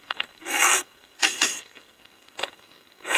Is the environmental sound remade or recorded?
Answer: remade